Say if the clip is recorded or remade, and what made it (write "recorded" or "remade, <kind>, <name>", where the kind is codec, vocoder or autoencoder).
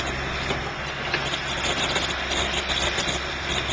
recorded